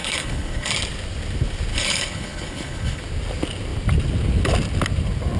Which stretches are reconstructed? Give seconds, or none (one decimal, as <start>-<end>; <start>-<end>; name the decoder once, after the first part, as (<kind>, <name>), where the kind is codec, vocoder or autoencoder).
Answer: 0.0-0.7 (codec, HILCodec); 1.7-3.0